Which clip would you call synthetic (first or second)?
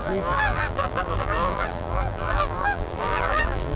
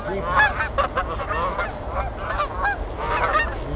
first